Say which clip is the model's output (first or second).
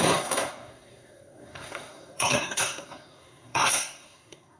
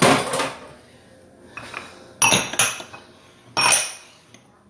first